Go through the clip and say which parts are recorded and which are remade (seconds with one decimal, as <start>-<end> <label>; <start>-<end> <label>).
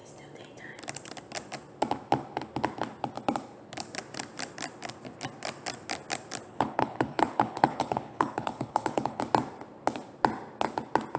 0.0-6.5 recorded; 6.5-9.2 remade; 9.2-11.2 recorded